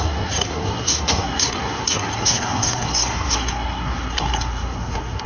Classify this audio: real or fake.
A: fake